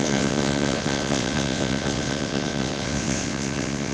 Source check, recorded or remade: remade